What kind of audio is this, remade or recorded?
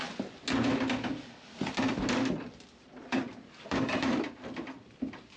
recorded